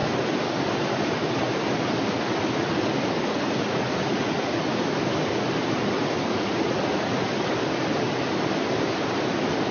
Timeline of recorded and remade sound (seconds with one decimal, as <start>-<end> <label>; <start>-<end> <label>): 0.0-3.3 recorded; 3.3-4.6 remade; 4.6-6.3 recorded; 6.3-7.3 remade; 7.3-9.7 recorded